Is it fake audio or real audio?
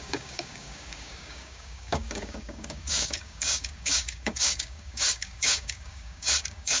fake